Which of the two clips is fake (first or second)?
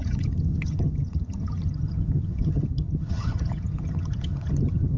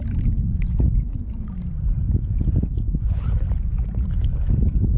first